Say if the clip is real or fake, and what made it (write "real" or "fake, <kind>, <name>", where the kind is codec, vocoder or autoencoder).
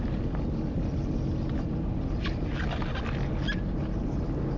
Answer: real